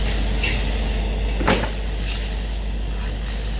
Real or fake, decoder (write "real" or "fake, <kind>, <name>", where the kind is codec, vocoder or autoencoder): real